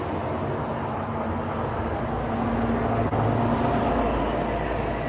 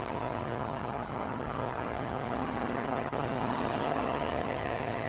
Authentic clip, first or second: first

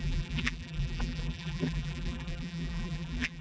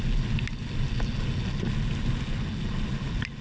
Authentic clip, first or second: second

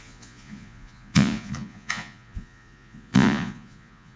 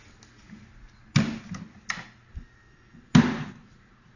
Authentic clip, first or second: second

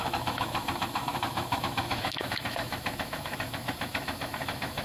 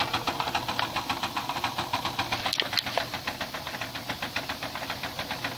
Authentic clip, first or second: second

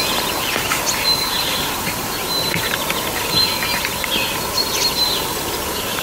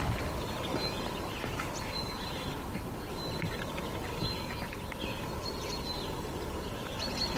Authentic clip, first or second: first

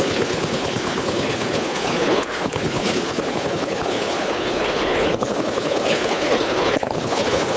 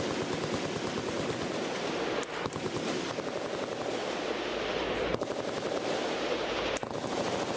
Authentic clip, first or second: second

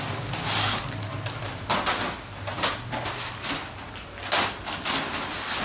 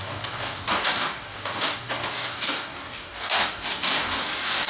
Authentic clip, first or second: first